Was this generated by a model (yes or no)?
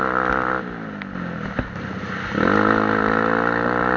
no